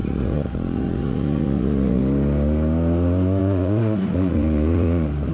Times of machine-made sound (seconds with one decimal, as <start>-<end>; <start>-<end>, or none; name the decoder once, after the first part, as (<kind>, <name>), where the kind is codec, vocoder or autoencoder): 0.0-2.0 (vocoder, Vocos); 3.4-5.3